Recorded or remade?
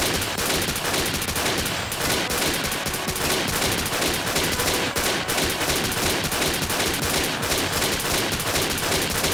recorded